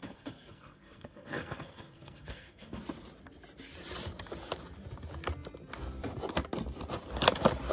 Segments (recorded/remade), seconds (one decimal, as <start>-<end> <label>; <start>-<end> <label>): 0.0-2.8 remade; 2.8-7.7 recorded